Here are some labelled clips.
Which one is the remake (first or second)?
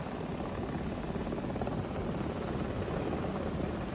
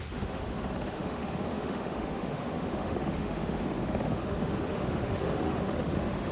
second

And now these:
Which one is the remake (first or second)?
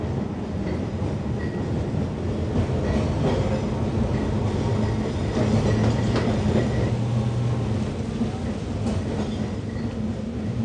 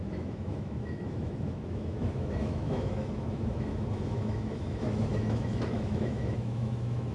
second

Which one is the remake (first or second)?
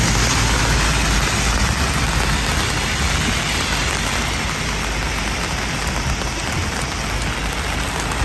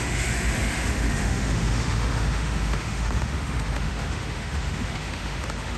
second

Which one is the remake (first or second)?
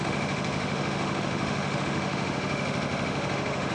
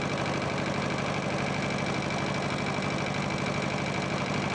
first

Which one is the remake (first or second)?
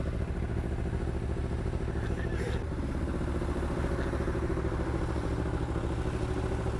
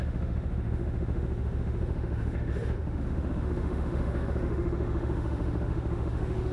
second